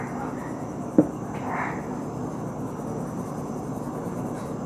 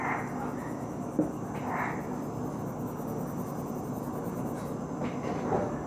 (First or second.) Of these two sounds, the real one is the second